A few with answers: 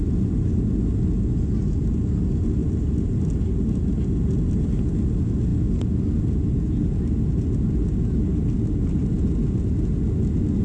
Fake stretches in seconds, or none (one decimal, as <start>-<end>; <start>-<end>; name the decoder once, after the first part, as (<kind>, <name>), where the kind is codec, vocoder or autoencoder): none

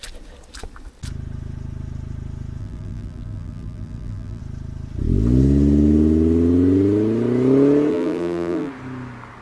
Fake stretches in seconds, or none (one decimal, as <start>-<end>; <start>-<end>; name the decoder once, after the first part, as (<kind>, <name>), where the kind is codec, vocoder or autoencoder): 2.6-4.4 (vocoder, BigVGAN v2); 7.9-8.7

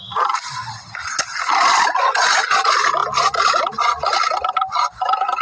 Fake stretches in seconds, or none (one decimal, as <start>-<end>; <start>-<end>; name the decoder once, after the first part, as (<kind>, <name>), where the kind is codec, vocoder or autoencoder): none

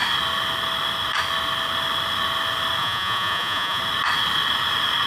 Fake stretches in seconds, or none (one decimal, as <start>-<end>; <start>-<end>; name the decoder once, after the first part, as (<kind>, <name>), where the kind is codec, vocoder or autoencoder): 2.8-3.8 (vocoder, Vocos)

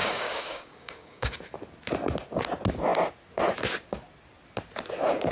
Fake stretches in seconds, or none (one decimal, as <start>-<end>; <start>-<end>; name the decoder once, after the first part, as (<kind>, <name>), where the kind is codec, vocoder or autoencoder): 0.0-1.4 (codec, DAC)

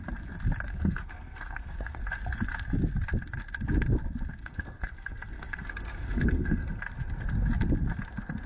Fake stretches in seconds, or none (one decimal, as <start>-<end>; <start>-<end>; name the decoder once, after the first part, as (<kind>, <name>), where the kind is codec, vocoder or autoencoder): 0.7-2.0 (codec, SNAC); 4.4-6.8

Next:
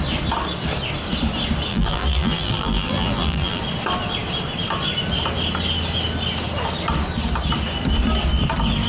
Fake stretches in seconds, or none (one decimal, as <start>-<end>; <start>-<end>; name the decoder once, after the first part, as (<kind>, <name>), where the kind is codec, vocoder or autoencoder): 1.7-3.6 (vocoder, BigVGAN v2)